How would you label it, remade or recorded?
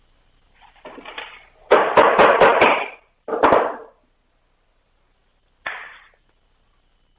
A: recorded